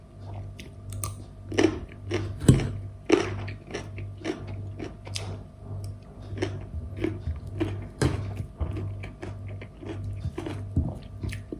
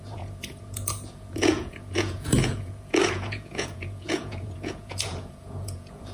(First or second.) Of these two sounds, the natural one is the first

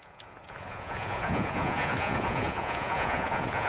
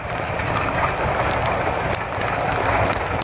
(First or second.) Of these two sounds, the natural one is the second